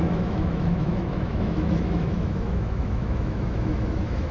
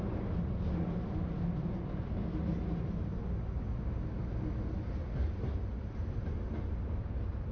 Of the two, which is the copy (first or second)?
first